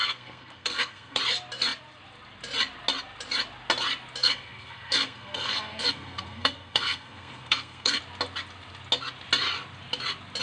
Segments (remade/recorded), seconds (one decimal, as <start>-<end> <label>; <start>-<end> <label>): 0.0-1.2 remade; 1.2-4.2 recorded; 4.2-8.0 remade; 8.0-10.4 recorded